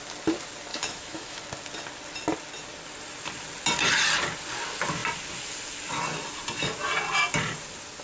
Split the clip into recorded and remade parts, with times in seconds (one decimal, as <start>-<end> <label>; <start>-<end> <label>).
0.0-0.7 recorded; 0.7-1.4 remade; 1.4-8.0 recorded